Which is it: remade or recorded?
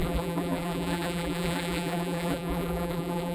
remade